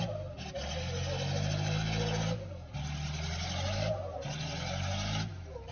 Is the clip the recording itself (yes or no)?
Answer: yes